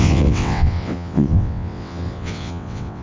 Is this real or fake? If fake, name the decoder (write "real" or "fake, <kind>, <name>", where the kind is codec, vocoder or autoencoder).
fake, vocoder, WaveNeXt